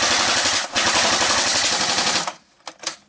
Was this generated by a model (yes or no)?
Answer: no